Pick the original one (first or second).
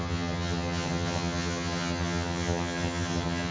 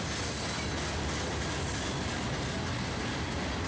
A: second